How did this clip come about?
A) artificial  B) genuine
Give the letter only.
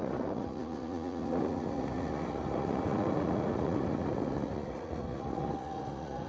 A